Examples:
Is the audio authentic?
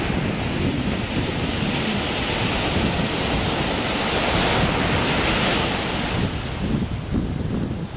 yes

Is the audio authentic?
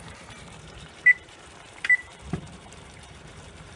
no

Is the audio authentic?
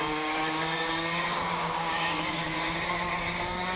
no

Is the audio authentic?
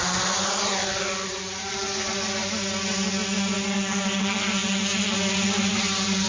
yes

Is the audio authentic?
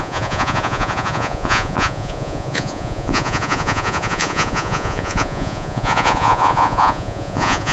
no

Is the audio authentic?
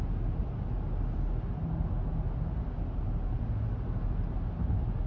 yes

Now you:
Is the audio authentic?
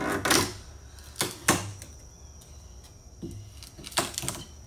yes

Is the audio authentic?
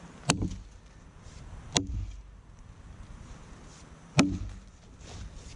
yes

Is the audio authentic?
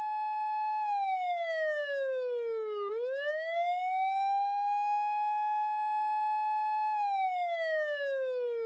no